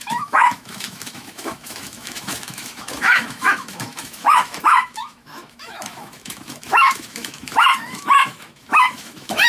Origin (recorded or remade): remade